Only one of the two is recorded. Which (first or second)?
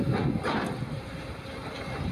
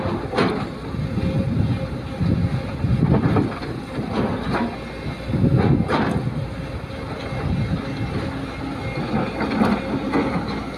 second